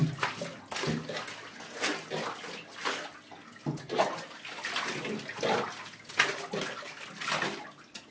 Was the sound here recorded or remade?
recorded